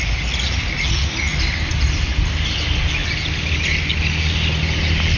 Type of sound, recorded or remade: recorded